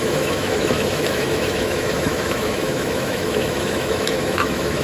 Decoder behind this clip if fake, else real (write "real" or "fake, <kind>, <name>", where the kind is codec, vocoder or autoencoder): fake, autoencoder, DAC-VAE